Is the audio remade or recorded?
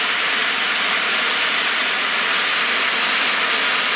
recorded